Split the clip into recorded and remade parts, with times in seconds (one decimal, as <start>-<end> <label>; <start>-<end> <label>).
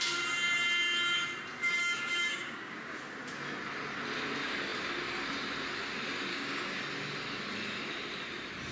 0.0-1.6 recorded; 1.6-3.0 remade; 3.0-6.3 recorded; 6.3-6.8 remade; 6.8-8.7 recorded